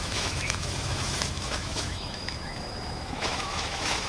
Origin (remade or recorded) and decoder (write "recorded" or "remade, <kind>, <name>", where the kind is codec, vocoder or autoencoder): remade, autoencoder, DAC-VAE